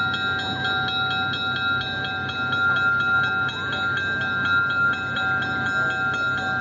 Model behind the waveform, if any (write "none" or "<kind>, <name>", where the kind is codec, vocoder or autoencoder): none